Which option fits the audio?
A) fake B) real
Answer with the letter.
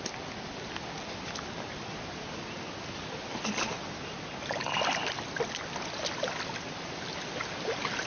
B